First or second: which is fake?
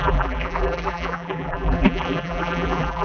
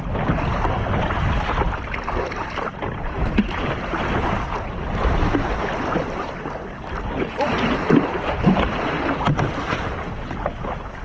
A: first